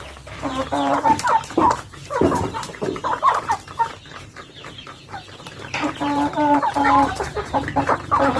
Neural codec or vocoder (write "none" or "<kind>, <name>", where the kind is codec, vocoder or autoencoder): vocoder, BigVGAN v2